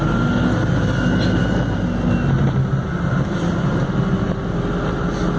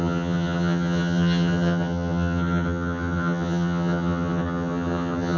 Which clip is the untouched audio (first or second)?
first